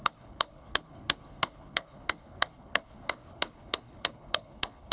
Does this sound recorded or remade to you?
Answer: remade